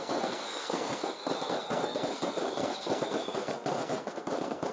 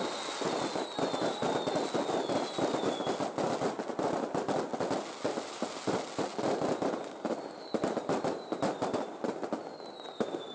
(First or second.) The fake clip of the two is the first